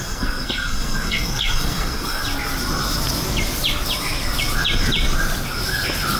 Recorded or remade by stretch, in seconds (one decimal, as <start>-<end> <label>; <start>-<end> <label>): 0.0-2.2 remade; 2.2-6.2 recorded